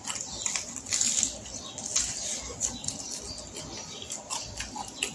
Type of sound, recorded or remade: remade